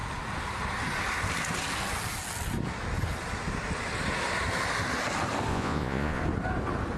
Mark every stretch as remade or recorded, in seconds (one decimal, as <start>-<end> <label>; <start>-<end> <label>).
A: 0.0-5.5 recorded; 5.5-6.2 remade; 6.2-7.0 recorded